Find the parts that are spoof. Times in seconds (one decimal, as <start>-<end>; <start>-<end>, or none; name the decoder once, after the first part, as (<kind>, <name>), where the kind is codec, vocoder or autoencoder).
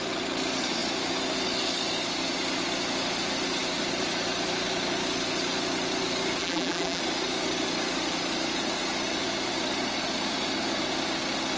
6.4-7.0 (vocoder, BigVGAN v2)